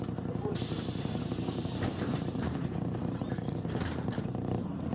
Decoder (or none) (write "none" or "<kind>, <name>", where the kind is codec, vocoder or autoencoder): vocoder, BigVGAN v2